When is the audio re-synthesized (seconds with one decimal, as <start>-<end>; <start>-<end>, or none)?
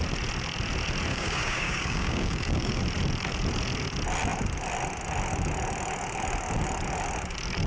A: 1.1-2.8